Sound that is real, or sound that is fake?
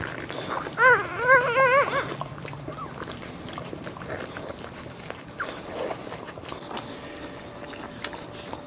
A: real